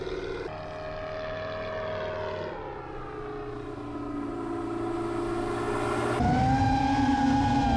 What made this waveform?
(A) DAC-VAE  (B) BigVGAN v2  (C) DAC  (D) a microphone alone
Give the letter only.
D